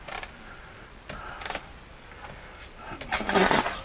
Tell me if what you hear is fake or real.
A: real